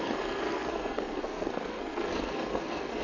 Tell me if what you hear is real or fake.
fake